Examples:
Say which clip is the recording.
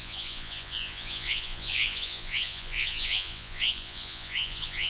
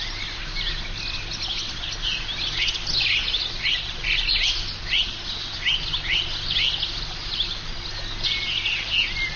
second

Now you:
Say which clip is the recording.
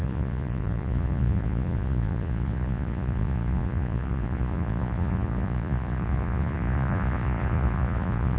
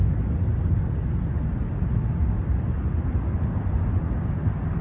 second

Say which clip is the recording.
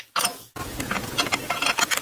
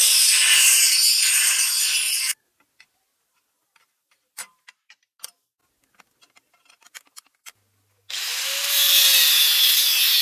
second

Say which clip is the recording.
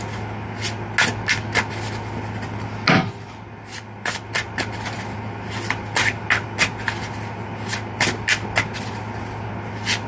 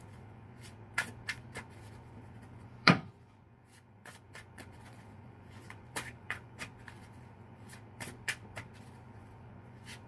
first